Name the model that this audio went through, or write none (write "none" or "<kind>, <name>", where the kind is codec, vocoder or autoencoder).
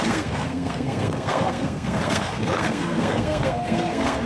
codec, SNAC